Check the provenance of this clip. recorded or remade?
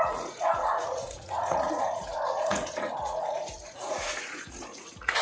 remade